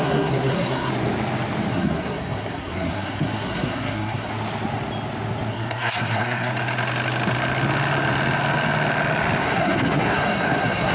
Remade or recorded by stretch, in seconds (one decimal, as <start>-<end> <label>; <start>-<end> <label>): 0.0-0.9 remade; 0.9-1.7 recorded; 1.7-4.3 remade; 4.3-5.5 recorded; 5.5-6.5 remade; 6.5-9.4 recorded; 9.4-10.9 remade